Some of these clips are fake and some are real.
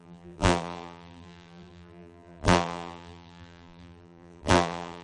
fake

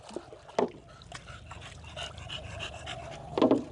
real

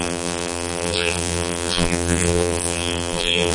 fake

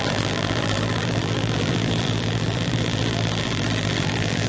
fake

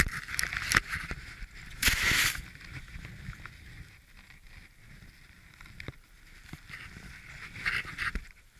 real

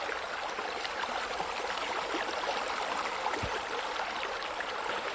fake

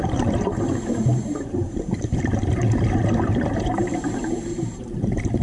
fake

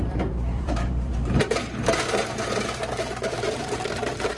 fake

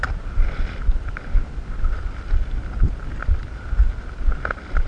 fake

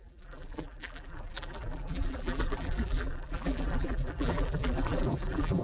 fake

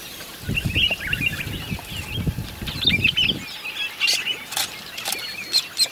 real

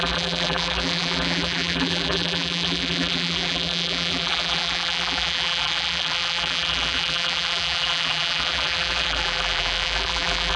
fake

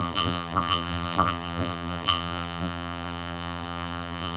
fake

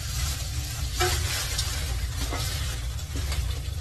real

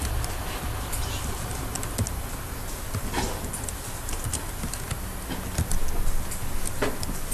real